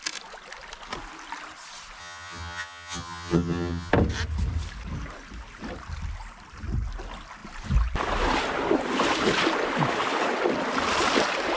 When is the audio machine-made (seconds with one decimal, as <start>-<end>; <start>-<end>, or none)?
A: 2.0-3.9